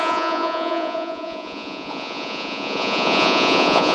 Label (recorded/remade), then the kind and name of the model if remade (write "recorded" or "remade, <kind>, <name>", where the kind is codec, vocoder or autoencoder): remade, vocoder, Vocos